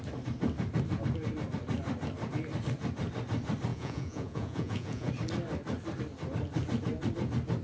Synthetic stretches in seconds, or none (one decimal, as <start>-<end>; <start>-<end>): 3.7-5.1